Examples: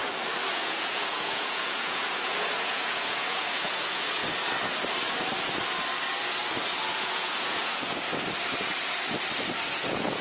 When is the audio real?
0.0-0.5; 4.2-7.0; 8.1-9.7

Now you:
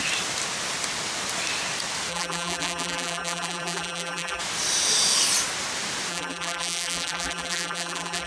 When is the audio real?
0.0-2.1; 4.4-6.1